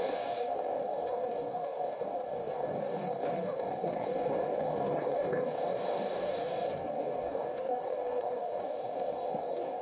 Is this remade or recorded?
remade